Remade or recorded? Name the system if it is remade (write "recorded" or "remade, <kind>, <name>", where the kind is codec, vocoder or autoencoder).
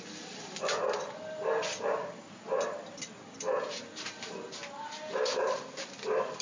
remade, vocoder, BigVGAN v2